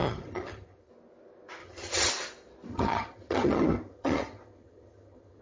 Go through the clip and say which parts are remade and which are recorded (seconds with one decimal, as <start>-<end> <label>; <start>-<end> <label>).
0.0-0.9 remade; 0.9-1.6 recorded; 1.6-2.1 remade; 2.1-2.7 recorded; 2.7-5.4 remade